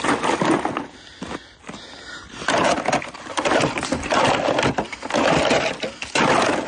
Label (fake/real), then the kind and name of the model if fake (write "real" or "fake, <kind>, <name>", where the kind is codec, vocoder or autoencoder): real